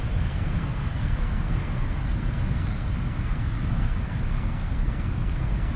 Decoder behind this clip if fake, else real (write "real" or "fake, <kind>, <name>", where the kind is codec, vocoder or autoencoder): fake, codec, SNAC